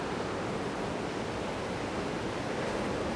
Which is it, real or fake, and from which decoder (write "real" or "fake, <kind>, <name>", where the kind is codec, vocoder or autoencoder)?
real